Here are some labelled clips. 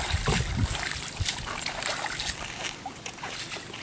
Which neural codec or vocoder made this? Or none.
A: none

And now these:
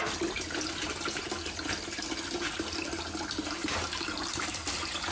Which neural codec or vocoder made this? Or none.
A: none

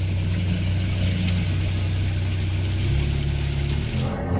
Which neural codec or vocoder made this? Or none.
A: none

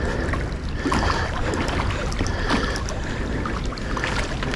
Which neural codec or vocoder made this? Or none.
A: none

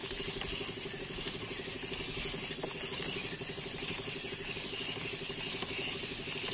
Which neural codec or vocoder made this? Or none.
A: none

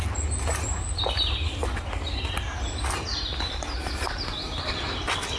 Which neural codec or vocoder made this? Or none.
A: none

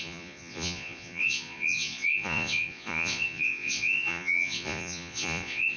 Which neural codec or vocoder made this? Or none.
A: vocoder, Vocos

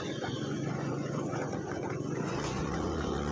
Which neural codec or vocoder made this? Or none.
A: vocoder, Vocos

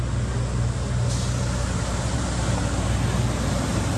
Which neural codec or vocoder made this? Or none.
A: none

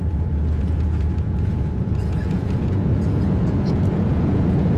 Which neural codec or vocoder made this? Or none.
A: vocoder, Vocos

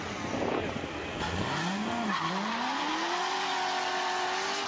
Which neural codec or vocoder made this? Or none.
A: none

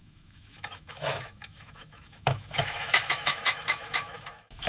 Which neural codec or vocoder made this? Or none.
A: autoencoder, DAC-VAE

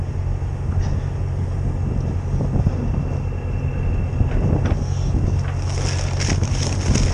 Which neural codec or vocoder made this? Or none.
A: none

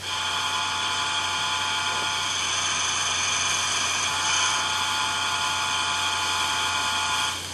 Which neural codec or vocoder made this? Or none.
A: none